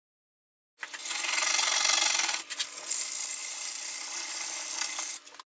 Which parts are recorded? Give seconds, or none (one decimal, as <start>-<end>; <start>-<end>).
0.0-3.4; 4.6-5.6